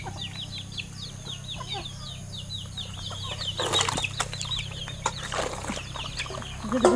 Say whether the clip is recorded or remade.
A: recorded